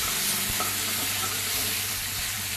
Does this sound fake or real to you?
fake